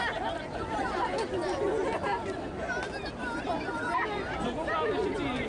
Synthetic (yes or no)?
no